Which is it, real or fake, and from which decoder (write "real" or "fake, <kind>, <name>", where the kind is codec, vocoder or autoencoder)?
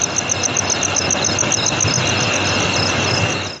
real